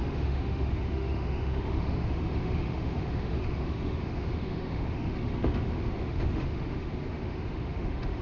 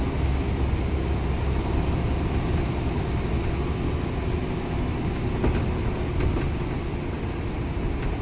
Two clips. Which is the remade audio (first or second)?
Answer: first